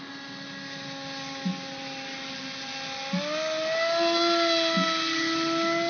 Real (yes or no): yes